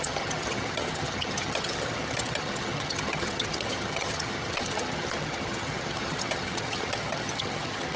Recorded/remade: remade